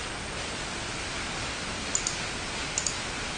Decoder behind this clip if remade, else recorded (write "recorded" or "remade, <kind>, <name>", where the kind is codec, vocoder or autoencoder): recorded